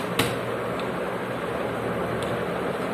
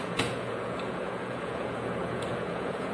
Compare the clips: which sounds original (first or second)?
first